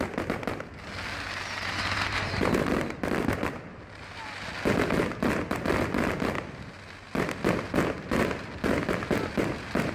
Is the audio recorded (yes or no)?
yes